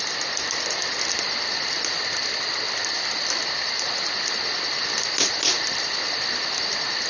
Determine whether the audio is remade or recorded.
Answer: recorded